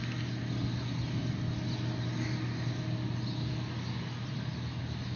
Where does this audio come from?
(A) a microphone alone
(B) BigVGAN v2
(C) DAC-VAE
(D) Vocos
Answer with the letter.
A